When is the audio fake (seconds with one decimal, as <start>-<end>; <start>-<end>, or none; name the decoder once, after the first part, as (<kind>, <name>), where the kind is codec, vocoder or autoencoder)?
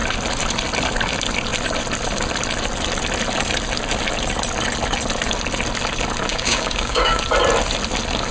6.3-7.2 (codec, DAC)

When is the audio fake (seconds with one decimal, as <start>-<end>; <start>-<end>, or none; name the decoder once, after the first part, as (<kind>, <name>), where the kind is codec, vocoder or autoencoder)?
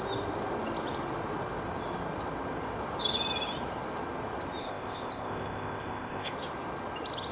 4.6-6.3 (codec, ZipCodec)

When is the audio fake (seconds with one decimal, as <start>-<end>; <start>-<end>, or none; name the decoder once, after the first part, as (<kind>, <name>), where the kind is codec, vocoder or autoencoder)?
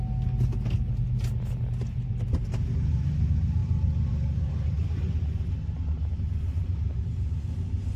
3.6-4.5 (vocoder, BigVGAN v2)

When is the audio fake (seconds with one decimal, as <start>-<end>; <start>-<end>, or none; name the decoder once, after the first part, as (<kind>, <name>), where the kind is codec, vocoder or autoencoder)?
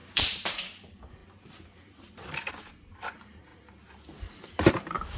0.0-1.2 (vocoder, BigVGAN v2); 2.5-3.5; 4.7-5.2